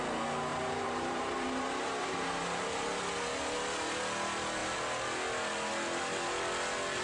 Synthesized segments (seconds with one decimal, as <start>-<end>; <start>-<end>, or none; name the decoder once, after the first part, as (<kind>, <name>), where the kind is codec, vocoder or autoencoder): 0.5-3.0 (vocoder, BigVGAN v2)

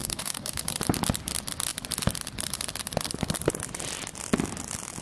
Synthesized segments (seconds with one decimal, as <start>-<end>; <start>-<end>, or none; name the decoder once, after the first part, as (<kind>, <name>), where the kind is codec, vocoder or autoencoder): 0.0-0.6 (codec, DAC)

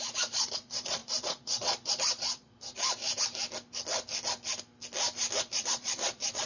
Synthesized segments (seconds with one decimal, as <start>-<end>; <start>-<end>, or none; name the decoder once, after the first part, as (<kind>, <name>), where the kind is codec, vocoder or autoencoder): 0.0-3.0 (vocoder, Vocos); 5.4-6.5